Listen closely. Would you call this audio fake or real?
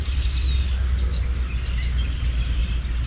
real